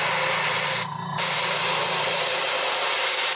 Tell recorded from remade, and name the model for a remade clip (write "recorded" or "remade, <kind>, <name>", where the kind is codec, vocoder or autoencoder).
recorded